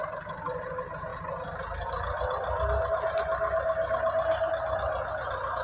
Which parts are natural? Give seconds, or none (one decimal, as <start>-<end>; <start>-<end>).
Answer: 0.0-5.6